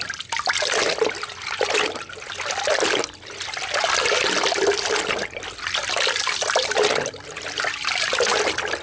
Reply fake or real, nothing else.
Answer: real